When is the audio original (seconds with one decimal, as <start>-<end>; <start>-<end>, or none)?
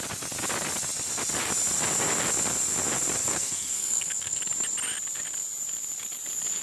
0.0-3.2; 4.4-6.6